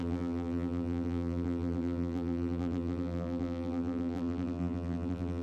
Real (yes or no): no